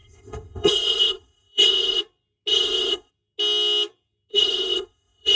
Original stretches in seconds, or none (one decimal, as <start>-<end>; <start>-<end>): 2.0-2.5; 3.1-4.3